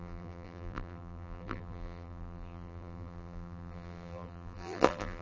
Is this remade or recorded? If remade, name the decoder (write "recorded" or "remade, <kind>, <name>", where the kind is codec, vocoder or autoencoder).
remade, vocoder, BigVGAN v2